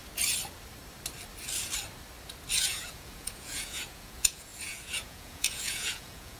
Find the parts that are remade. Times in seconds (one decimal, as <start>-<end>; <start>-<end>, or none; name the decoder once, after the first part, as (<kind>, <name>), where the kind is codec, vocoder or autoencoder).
2.6-6.4 (vocoder, Vocos)